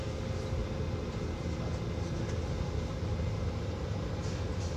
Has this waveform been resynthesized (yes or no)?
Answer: no